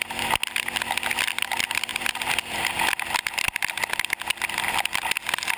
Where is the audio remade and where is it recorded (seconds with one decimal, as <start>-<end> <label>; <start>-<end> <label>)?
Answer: 0.0-5.6 recorded